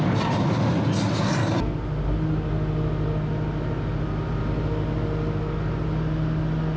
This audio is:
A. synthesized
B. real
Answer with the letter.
B